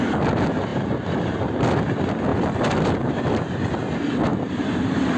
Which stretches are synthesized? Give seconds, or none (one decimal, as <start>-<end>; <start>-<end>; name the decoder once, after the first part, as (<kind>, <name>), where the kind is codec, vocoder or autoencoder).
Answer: 2.3-3.4 (vocoder, BigVGAN v2)